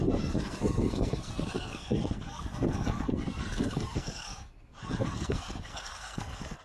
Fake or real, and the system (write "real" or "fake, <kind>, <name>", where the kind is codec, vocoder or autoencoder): fake, codec, SNAC